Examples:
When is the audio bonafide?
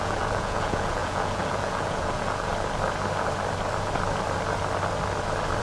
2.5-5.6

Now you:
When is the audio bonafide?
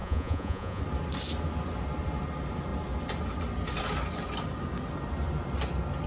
0.8-6.1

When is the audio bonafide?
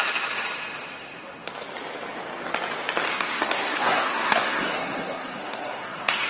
0.0-3.1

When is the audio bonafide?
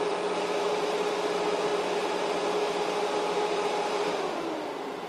0.0-5.1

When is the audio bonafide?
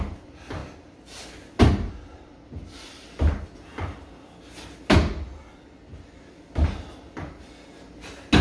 0.0-8.4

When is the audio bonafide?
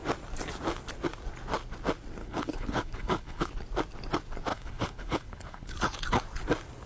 0.0-2.2; 3.5-4.5; 5.7-6.9